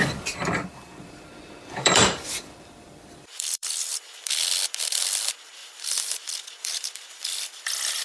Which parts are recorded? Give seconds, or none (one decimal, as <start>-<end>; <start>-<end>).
0.0-0.7; 3.9-5.6